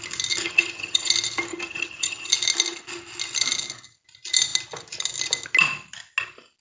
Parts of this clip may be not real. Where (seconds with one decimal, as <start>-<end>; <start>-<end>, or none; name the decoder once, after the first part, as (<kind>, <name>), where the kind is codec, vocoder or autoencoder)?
0.4-1.1 (vocoder, HiFi-GAN); 1.5-2.3